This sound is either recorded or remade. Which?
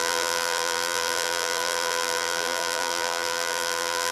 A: remade